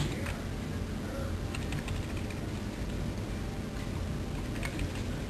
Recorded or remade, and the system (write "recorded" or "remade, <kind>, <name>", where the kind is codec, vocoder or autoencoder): recorded